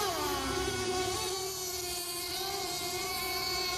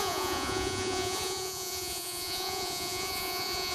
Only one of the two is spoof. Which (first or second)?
second